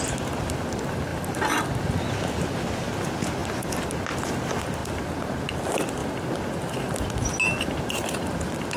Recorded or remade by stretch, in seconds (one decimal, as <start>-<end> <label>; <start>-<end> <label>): 0.0-1.1 recorded; 1.1-1.8 remade; 1.8-3.4 recorded; 3.4-3.9 remade; 3.9-8.8 recorded